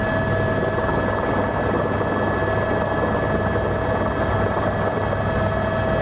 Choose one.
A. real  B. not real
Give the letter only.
A